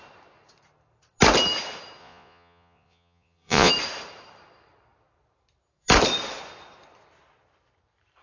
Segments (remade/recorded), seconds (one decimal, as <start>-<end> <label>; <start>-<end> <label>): 0.0-2.0 recorded; 2.0-3.7 remade; 3.7-8.2 recorded